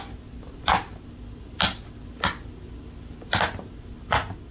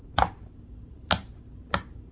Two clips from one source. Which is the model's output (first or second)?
second